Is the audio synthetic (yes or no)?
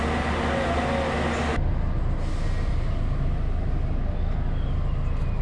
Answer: no